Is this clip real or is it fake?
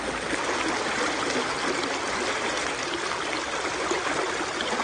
real